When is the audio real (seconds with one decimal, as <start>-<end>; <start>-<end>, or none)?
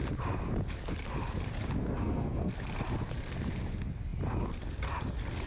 0.0-1.8; 2.5-5.5